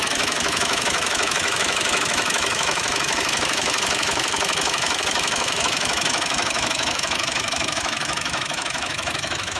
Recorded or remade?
remade